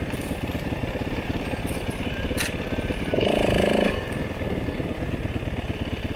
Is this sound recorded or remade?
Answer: recorded